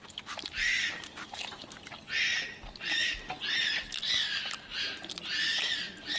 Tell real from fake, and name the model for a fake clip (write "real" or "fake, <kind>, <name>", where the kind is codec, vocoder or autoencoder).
real